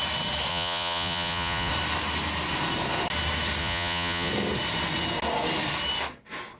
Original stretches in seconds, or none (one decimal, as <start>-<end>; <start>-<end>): 0.0-0.5; 1.7-3.6; 4.3-6.6